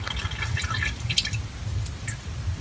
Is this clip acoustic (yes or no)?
yes